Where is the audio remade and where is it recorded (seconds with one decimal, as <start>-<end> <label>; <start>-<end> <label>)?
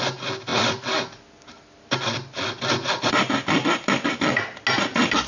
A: 0.0-5.3 recorded